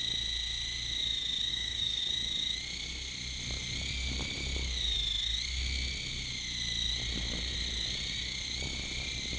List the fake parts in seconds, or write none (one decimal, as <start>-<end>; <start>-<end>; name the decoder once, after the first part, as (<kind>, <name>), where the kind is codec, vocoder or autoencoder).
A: 1.5-2.0 (codec, DAC)